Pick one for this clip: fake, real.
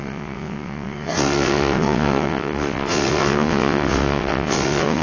fake